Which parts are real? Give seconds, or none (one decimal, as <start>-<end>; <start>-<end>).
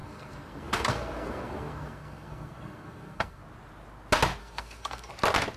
3.4-4.4; 5.1-5.6